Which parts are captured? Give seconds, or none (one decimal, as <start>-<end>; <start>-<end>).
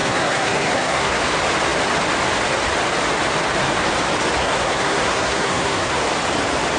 1.2-4.4; 6.0-6.8